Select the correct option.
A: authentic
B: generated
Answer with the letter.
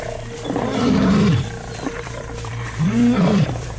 B